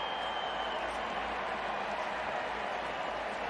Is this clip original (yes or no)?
yes